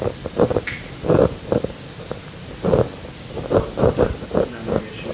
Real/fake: real